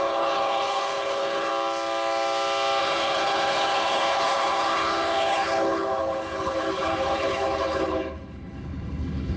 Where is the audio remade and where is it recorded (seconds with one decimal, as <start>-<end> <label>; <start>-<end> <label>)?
0.0-1.5 remade; 1.5-2.8 recorded; 2.8-9.4 remade

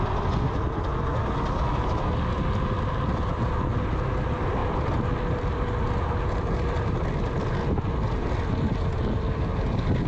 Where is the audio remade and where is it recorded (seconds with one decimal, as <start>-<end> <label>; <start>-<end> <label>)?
0.0-10.1 recorded

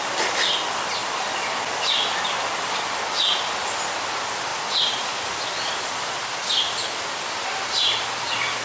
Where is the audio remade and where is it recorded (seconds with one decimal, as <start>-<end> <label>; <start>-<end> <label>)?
0.0-8.6 recorded

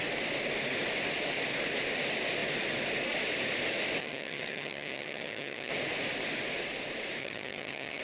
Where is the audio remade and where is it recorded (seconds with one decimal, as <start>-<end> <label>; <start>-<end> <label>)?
0.0-4.0 recorded; 4.0-5.7 remade; 5.7-7.2 recorded; 7.2-8.0 remade

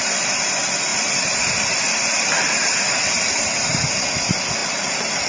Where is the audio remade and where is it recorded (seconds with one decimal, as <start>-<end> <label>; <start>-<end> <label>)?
0.0-0.9 recorded; 0.9-3.9 remade; 3.9-4.6 recorded; 4.6-5.3 remade

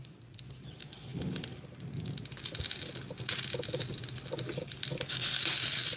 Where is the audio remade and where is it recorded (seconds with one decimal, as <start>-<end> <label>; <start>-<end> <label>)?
0.0-1.1 remade; 1.1-4.6 recorded; 4.6-6.0 remade

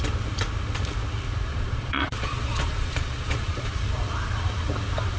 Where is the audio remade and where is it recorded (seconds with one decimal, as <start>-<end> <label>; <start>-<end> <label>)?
0.0-1.5 recorded; 1.5-3.7 remade; 3.7-5.2 recorded

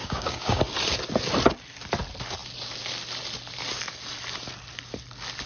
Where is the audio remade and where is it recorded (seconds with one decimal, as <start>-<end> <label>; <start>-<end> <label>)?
0.0-0.6 remade; 0.6-5.5 recorded